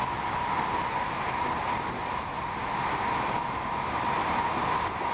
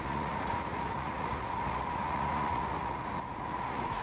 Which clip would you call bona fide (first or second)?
first